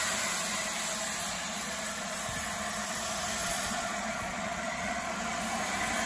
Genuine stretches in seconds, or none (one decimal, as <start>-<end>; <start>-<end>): 0.0-1.2; 2.2-3.4; 5.4-6.1